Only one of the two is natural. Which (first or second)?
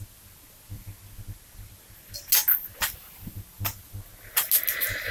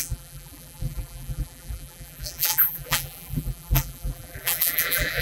first